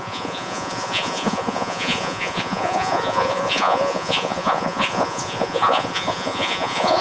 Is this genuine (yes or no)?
no